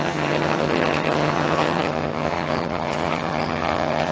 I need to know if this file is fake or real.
fake